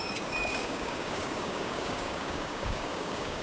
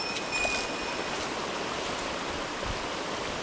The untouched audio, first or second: second